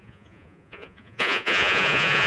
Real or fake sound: fake